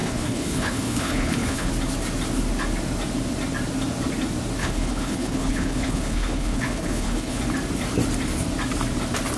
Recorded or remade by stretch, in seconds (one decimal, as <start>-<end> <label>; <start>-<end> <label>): 0.0-1.7 remade; 1.7-4.6 recorded; 4.6-7.4 remade; 7.4-9.4 recorded